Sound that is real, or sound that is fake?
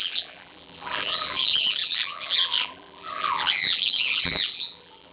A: fake